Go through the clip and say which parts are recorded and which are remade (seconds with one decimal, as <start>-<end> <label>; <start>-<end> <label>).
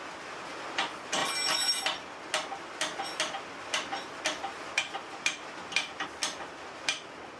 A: 0.0-7.4 recorded